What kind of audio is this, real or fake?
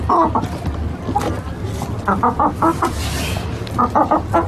real